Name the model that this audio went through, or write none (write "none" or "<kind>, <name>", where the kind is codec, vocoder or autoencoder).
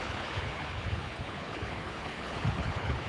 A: codec, HILCodec